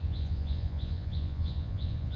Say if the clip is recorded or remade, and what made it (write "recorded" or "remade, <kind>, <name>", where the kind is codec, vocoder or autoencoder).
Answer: remade, vocoder, Vocos